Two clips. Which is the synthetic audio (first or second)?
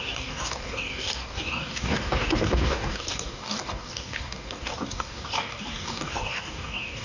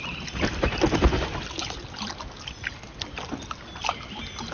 first